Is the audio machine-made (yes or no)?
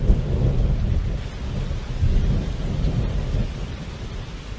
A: no